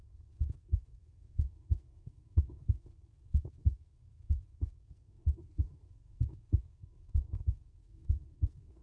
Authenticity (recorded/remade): remade